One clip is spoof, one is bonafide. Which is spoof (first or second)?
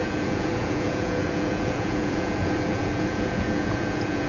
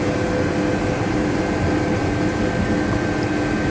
first